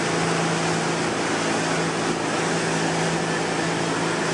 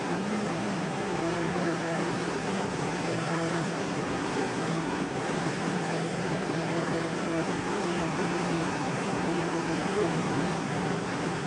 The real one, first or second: first